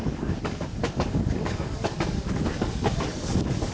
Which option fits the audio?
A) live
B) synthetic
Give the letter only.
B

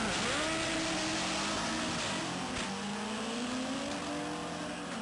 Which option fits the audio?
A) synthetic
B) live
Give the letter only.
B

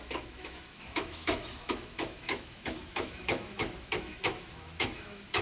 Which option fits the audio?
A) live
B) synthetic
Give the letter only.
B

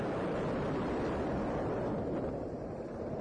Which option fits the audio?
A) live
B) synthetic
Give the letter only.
A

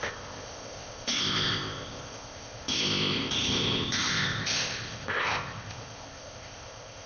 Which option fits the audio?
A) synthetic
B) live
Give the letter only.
A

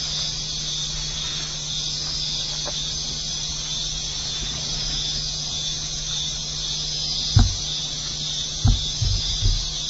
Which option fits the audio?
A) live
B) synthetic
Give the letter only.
A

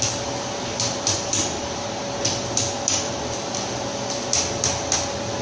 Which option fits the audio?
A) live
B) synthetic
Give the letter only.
A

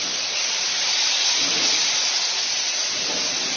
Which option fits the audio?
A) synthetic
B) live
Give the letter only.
A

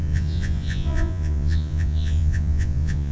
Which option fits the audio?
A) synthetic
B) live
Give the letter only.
A